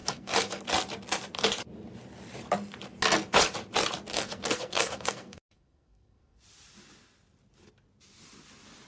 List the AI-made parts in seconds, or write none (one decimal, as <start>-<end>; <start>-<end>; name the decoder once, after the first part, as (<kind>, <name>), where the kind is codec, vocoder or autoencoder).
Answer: 0.0-0.6 (codec, SNAC); 4.1-6.4